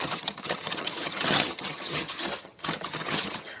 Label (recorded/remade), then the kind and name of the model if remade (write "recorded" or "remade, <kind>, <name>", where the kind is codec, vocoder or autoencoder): remade, vocoder, HiFi-GAN